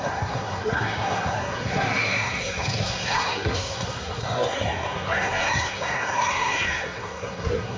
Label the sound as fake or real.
fake